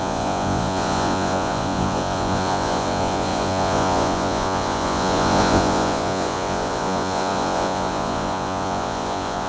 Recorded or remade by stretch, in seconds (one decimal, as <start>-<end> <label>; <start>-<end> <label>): 0.0-9.5 remade